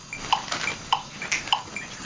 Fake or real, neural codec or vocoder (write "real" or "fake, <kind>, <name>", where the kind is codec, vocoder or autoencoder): real